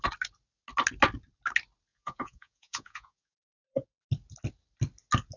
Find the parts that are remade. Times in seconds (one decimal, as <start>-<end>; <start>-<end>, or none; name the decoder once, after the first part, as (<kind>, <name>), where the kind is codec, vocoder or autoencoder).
1.9-4.0 (vocoder, Vocos)